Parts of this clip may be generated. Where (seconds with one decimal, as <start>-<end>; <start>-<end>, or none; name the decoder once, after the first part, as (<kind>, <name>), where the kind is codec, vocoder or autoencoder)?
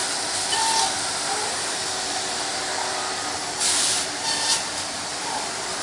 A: 5.1-5.8 (vocoder, BigVGAN v2)